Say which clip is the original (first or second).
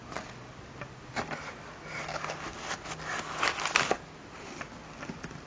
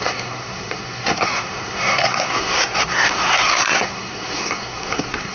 first